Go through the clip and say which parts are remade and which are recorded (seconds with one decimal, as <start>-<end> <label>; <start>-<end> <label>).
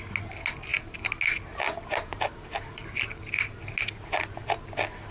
0.0-5.1 recorded